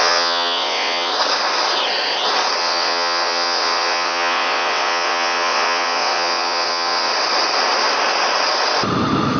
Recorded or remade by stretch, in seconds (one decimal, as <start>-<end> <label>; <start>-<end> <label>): 0.0-1.1 remade; 1.1-2.6 recorded; 2.6-7.1 remade; 7.1-9.4 recorded